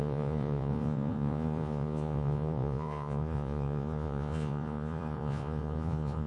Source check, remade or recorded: remade